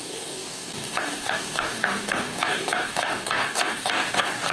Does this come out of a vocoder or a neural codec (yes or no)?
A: yes